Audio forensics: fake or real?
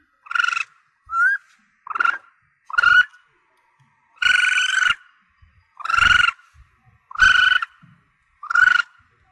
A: real